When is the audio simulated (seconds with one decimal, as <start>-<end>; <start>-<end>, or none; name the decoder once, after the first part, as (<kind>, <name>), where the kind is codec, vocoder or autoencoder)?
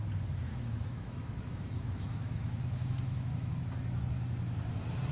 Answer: 0.5-3.6 (autoencoder, DAC-VAE)